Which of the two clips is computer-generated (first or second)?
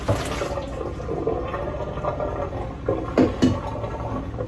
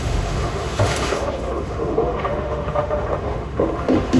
second